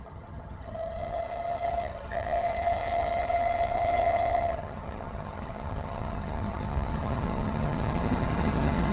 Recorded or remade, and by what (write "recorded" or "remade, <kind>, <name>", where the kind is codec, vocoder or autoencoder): remade, vocoder, HiFi-GAN